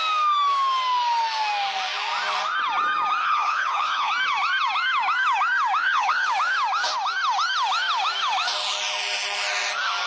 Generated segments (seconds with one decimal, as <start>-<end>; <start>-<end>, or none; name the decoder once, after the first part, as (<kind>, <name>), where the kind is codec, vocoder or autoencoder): 3.2-4.1 (codec, HILCodec); 5.8-6.3